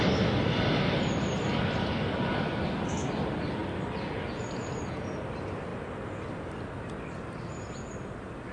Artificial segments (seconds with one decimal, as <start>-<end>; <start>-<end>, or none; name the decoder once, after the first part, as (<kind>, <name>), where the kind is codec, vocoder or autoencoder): none